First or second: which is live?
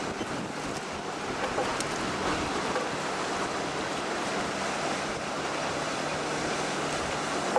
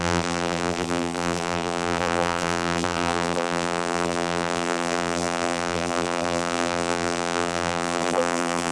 first